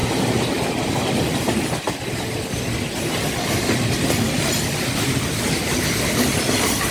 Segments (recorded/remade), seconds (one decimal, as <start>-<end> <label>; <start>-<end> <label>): 0.0-4.1 recorded; 4.1-6.9 remade